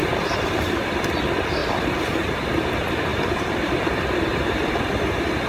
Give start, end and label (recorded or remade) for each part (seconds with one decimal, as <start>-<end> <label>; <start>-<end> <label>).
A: 0.0-1.2 remade; 1.2-3.1 recorded; 3.1-3.8 remade; 3.8-4.3 recorded; 4.3-4.8 remade; 4.8-5.5 recorded